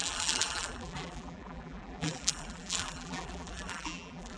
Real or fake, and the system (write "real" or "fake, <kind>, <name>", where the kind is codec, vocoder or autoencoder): fake, vocoder, BigVGAN v2